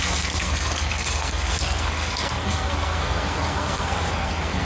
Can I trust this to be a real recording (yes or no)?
no